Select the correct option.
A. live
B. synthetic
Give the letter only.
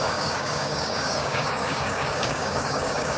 B